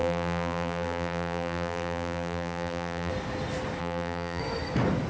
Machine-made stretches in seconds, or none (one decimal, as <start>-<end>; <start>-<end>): 0.0-3.1; 3.8-4.4